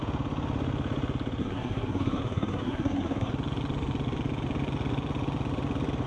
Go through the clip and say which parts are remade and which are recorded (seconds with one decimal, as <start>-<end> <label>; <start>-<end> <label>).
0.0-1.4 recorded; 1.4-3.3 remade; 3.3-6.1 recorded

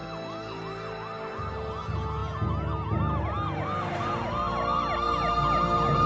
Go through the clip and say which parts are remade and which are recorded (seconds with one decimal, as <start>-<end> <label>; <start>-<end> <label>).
0.0-6.1 recorded

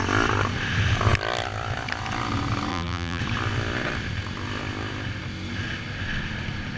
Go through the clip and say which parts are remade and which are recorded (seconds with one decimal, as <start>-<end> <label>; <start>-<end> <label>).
0.0-2.7 recorded; 2.7-3.2 remade; 3.2-6.8 recorded

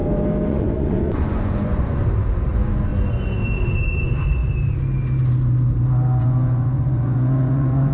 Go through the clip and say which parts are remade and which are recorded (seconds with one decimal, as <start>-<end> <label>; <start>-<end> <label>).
0.0-0.5 recorded; 0.5-2.0 remade; 2.0-2.5 recorded; 2.5-2.9 remade; 2.9-3.7 recorded; 3.7-4.4 remade; 4.4-6.2 recorded; 6.2-7.9 remade